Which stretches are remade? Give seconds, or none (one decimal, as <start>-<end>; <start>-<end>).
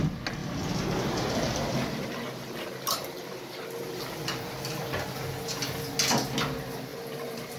0.4-5.0; 6.9-7.6